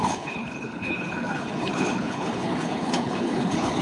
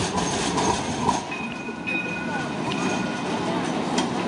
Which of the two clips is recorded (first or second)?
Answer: second